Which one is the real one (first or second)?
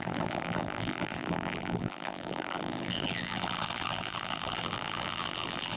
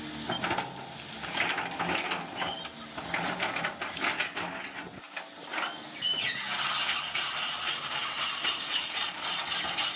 second